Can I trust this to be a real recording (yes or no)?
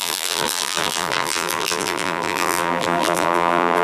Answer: no